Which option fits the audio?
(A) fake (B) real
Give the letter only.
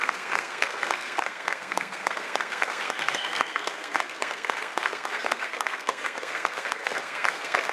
A